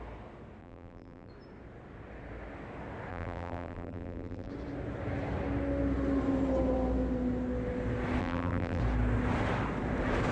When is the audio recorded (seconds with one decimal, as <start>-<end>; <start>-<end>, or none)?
0.0-0.6; 1.3-3.1; 4.5-8.2; 8.8-10.3